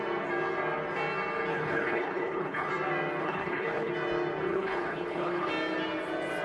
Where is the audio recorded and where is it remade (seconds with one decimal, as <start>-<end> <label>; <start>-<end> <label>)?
0.0-1.5 recorded; 1.5-2.7 remade; 2.7-3.2 recorded; 3.2-3.9 remade; 3.9-4.5 recorded; 4.5-5.5 remade; 5.5-6.4 recorded